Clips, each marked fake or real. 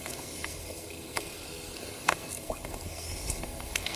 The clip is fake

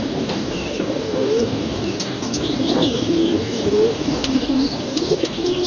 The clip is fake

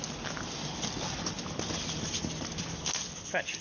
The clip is real